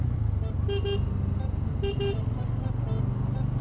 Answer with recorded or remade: recorded